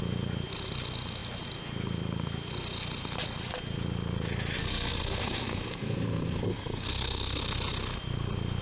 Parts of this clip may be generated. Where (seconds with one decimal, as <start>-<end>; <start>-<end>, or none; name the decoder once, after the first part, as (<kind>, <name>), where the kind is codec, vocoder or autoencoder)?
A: 4.6-7.4 (codec, SNAC)